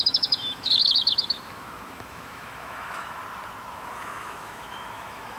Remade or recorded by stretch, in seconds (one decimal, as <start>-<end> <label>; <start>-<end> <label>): 0.0-3.2 remade; 3.2-3.7 recorded; 3.7-5.4 remade